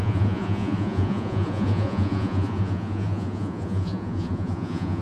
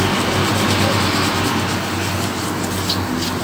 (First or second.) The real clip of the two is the second